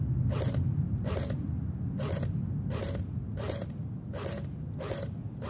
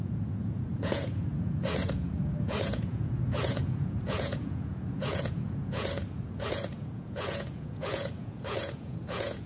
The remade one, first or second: second